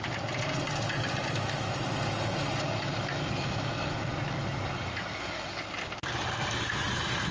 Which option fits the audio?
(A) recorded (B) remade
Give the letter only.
A